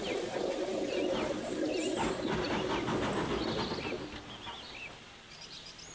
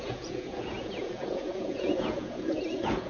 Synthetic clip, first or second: second